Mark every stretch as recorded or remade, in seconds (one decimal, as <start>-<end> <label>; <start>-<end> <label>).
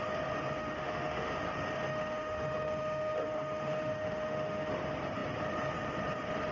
0.0-0.6 recorded; 0.6-1.3 remade; 1.3-1.9 recorded; 1.9-4.7 remade; 4.7-6.5 recorded